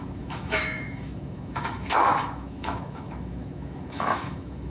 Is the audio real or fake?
fake